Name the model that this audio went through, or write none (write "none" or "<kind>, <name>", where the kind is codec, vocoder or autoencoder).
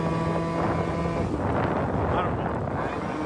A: none